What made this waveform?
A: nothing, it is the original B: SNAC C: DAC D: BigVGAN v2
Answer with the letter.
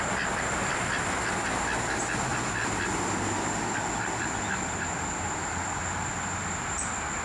A